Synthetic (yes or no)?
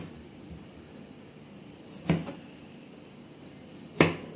no